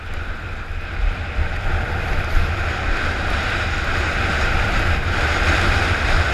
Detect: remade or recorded recorded